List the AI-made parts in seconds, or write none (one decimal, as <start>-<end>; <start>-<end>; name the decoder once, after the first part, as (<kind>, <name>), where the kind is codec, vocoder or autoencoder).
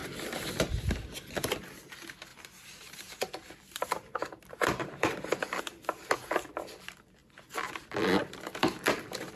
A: 2.3-5.6 (vocoder, BigVGAN v2)